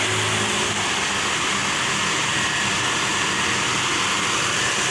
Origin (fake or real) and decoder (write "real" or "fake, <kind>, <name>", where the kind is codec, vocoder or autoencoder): real